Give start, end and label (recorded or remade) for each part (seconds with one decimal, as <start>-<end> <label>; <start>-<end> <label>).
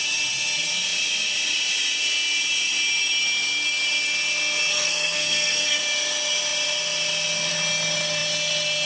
0.0-4.7 recorded; 4.7-5.8 remade; 5.8-8.9 recorded